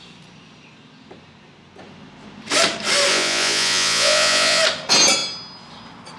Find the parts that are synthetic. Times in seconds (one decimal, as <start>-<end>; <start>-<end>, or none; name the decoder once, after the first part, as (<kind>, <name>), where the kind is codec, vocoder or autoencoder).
3.1-4.6 (vocoder, Vocos)